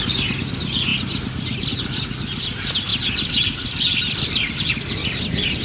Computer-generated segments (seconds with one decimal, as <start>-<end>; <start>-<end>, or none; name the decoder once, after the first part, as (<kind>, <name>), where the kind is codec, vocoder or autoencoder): none